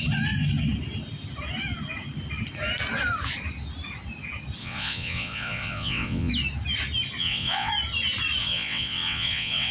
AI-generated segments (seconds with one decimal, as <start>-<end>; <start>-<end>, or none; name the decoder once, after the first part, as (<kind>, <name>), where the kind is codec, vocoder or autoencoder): 4.6-6.3 (vocoder, WaveNeXt); 7.2-7.7; 8.4-9.7